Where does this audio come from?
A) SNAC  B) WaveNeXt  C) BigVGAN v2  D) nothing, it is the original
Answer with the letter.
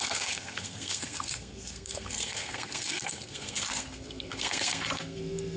A